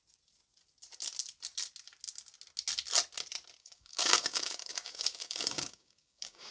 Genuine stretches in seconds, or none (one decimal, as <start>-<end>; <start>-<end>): 0.0-3.6